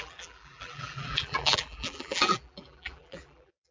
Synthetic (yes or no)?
yes